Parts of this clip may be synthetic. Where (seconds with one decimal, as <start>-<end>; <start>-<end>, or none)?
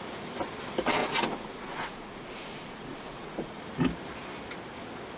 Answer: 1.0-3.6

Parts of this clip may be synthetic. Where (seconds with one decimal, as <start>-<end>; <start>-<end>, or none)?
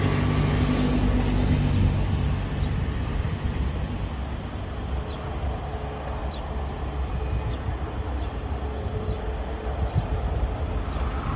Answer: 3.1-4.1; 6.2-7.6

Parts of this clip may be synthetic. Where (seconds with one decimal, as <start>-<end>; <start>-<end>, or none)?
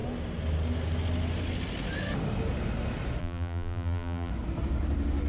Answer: 3.2-4.3